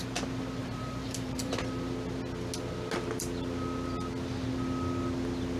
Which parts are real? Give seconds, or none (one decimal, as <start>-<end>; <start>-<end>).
0.0-0.6; 1.6-5.6